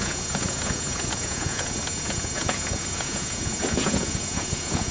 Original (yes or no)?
no